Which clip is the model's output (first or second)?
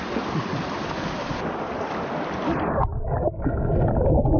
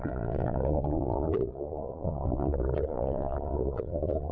second